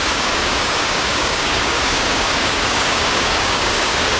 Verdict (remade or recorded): remade